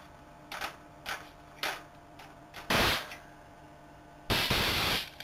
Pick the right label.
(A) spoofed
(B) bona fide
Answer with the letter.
A